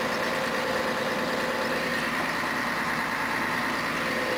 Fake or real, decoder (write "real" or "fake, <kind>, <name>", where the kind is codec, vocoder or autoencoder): real